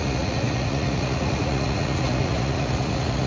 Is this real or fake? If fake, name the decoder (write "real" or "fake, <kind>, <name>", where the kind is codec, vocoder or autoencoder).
fake, vocoder, Vocos